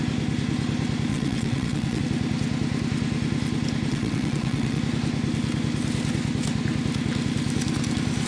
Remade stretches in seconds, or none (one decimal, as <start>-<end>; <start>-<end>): 1.1-2.0; 3.9-4.8